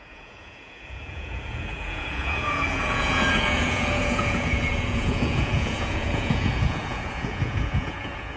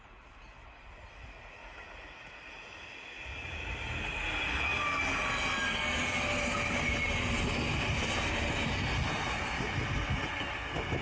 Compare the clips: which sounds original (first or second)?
second